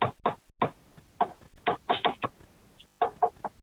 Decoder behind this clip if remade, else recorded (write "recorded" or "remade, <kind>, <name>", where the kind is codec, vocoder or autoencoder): recorded